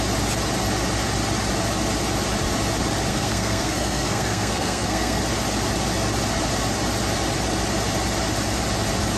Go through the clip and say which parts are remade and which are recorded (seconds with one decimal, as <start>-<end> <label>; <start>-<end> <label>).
0.0-3.1 recorded; 3.1-5.2 remade; 5.2-9.2 recorded